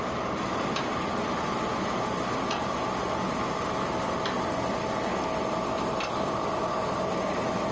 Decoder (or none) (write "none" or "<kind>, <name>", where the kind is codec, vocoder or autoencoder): none